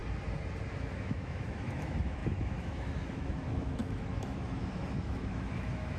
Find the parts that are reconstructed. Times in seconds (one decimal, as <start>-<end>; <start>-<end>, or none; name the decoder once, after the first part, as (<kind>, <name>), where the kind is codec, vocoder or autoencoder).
0.7-6.0 (autoencoder, DAC-VAE)